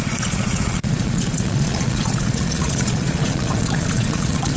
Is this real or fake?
fake